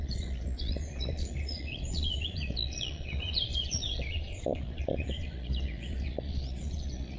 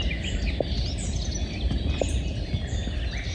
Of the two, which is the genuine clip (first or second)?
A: second